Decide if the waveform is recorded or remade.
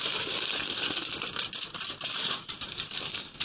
recorded